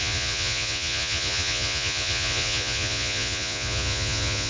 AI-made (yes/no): yes